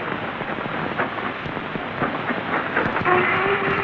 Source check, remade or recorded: recorded